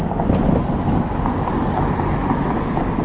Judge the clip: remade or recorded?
recorded